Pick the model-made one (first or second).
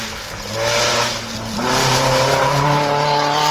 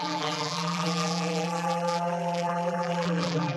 second